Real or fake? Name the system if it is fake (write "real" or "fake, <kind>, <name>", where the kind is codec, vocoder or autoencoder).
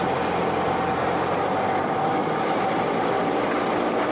real